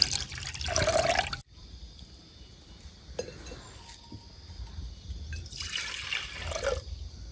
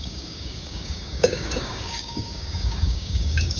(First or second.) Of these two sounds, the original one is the first